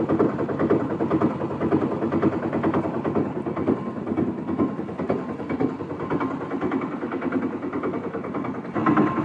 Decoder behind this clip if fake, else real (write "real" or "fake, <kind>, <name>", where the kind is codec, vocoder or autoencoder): real